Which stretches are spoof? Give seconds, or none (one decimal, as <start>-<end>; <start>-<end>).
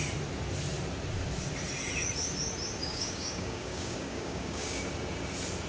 2.8-4.8